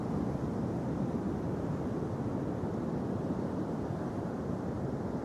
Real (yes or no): no